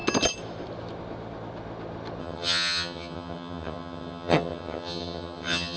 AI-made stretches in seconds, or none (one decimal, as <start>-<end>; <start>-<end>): 2.2-5.8